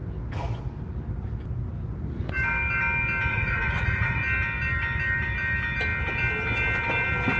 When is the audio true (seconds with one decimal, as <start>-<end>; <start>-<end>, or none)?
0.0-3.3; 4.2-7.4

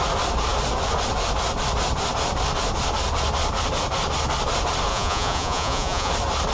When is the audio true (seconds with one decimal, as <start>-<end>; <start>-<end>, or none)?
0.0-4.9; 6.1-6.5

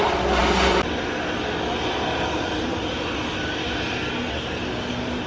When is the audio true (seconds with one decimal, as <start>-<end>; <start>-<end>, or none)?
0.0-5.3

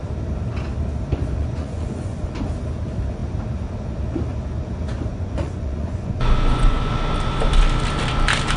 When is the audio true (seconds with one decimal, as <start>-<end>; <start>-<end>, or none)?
0.0-1.4; 2.4-5.1; 6.9-8.6

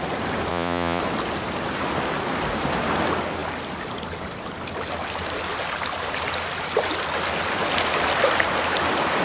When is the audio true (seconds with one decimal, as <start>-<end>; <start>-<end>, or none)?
0.0-0.5; 1.0-9.2

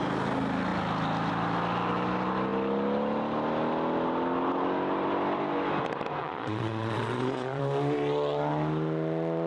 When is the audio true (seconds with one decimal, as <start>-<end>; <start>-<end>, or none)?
0.0-6.2; 7.6-9.5

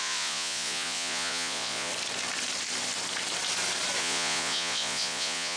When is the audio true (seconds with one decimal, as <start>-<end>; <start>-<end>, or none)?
1.9-4.0

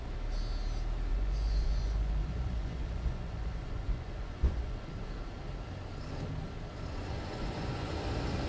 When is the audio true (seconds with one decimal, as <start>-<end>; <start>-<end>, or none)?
0.0-1.1; 4.9-6.9; 7.9-8.5